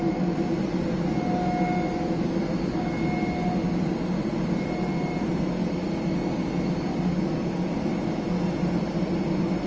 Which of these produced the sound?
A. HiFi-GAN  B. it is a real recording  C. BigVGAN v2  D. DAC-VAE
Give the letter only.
B